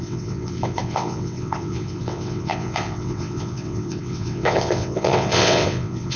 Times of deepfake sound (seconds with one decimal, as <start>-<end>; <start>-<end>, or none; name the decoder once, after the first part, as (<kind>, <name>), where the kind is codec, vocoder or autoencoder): 0.0-6.2 (vocoder, WaveNeXt)